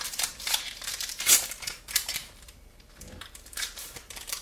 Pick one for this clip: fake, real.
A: fake